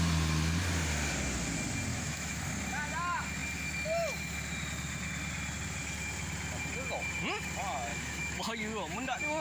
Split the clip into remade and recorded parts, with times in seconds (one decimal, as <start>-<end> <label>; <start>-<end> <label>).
0.0-1.9 recorded; 1.9-2.5 remade; 2.5-7.9 recorded; 7.9-9.4 remade